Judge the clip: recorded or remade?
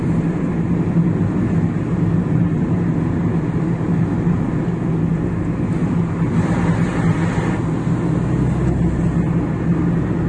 recorded